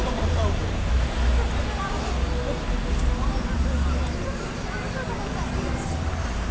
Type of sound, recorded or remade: recorded